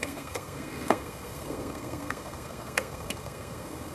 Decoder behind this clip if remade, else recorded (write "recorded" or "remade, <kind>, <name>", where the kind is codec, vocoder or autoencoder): remade, codec, SNAC